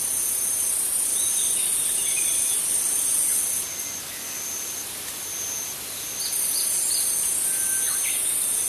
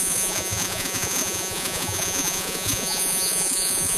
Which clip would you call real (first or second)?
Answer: first